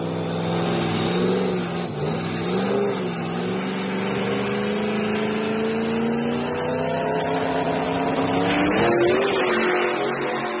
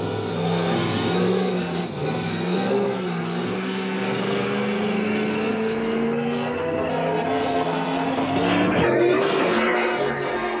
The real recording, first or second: first